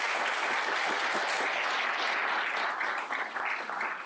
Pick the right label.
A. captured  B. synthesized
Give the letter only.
A